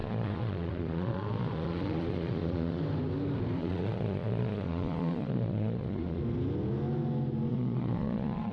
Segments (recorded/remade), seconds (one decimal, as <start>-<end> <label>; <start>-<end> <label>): 0.0-2.8 remade; 2.8-3.6 recorded; 3.6-6.2 remade; 6.2-7.5 recorded; 7.5-8.5 remade